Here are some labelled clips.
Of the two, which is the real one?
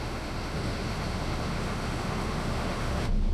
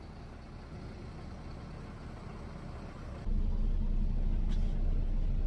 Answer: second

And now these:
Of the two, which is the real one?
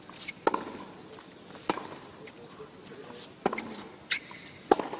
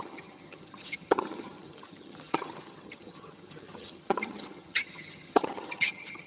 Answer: first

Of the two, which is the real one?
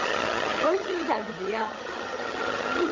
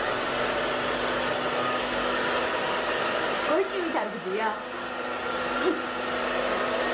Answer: second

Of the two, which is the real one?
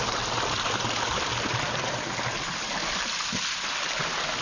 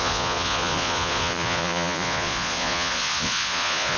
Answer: first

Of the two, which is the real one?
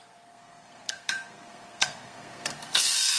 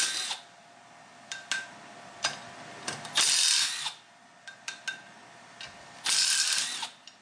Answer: second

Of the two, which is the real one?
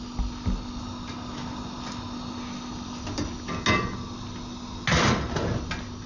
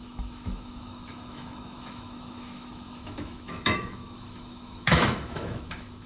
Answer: first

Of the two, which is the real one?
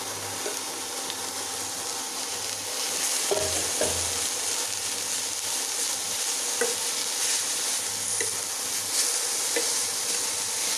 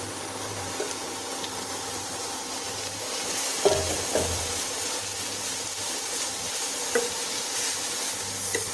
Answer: first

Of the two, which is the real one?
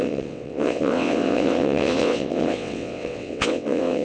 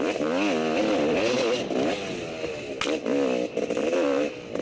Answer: second